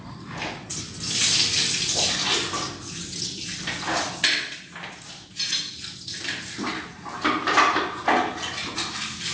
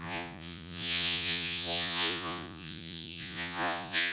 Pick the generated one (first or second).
second